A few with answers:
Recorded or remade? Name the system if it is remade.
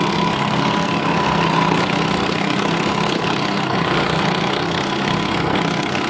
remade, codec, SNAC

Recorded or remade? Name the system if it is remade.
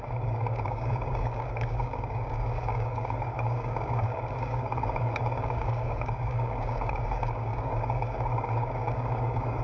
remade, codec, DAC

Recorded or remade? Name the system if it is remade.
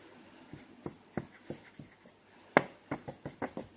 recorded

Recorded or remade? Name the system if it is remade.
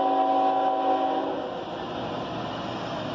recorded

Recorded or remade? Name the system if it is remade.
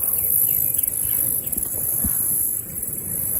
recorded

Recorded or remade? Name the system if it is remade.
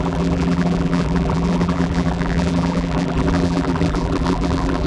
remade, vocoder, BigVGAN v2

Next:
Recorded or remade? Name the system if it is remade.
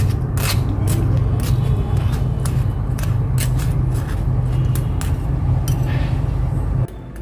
recorded